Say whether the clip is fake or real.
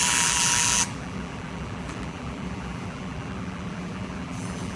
fake